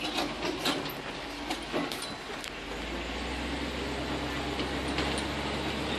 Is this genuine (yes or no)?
yes